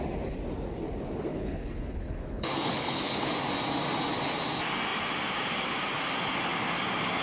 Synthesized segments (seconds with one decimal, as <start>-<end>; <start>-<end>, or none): 1.3-3.3